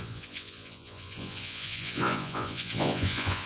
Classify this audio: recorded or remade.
remade